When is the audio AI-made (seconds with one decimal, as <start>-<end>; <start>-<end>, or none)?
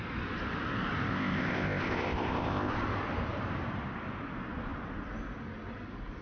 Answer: 1.1-2.7